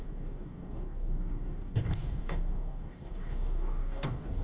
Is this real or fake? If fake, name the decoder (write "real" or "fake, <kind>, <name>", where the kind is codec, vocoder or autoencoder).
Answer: fake, codec, DAC